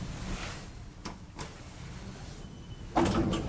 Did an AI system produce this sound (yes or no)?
no